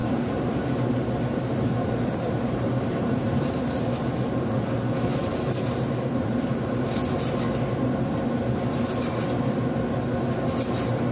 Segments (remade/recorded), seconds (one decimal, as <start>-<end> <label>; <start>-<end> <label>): 0.0-3.5 remade; 3.5-5.2 recorded; 5.2-6.9 remade; 6.9-11.1 recorded